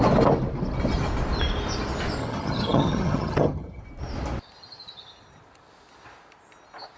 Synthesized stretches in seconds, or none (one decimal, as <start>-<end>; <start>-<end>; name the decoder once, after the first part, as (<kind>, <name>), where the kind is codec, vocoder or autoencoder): 2.2-3.8 (vocoder, HiFi-GAN)